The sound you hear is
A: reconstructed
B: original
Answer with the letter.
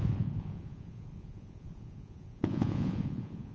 A